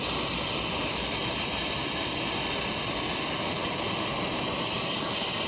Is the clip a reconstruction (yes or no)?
no